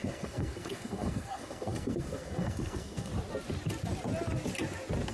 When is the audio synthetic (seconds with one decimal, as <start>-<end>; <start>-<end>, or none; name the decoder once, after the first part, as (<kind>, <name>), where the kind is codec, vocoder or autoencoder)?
0.0-3.1 (codec, SNAC)